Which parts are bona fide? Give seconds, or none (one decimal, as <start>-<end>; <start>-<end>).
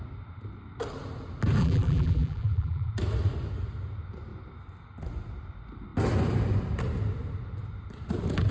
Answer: 0.0-1.6; 2.9-8.5